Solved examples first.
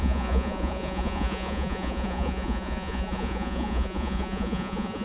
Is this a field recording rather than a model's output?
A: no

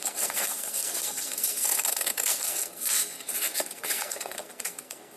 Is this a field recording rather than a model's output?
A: no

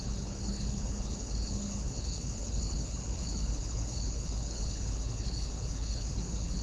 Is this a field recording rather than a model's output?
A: no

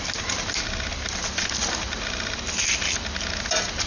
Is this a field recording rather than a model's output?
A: yes